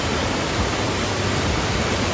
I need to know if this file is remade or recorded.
recorded